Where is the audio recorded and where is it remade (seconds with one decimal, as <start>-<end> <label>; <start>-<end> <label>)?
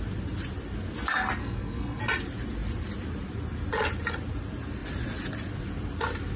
0.0-1.4 recorded; 1.4-2.0 remade; 2.0-6.4 recorded